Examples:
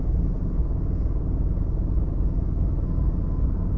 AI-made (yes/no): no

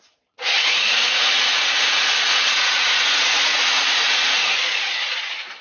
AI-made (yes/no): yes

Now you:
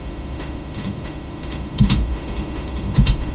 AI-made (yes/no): yes